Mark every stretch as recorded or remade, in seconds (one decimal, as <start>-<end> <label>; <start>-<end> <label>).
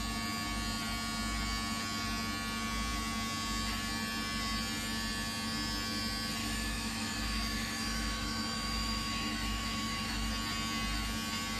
0.0-6.4 recorded; 6.4-10.3 remade; 10.3-11.6 recorded